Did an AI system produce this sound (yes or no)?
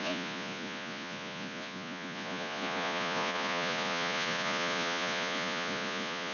yes